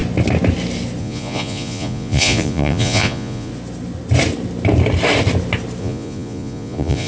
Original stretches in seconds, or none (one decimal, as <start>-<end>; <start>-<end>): 0.0-1.0; 3.5-5.8